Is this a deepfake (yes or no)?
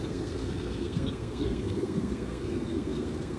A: yes